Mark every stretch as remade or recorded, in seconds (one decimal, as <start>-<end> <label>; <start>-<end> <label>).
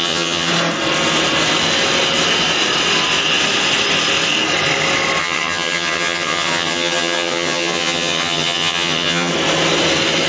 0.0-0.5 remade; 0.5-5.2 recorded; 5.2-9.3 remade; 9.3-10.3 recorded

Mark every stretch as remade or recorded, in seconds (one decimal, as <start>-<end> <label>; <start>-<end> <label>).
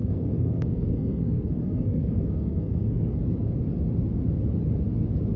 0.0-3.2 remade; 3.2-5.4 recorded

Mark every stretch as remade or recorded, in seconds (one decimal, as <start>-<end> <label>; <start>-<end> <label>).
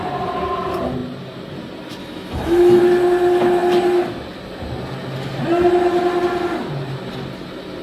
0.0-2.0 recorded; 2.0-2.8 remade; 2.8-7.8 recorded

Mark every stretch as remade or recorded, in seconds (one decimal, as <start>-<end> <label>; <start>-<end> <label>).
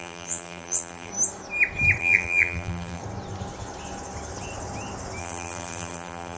0.0-1.1 remade; 1.1-2.0 recorded; 2.0-3.0 remade; 3.0-5.2 recorded; 5.2-6.4 remade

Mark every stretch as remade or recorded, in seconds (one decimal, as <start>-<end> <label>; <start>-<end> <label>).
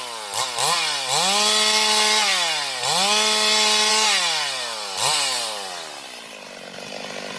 0.0-7.4 recorded